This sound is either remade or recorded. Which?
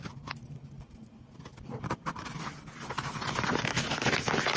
recorded